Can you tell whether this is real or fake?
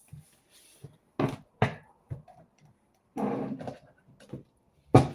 real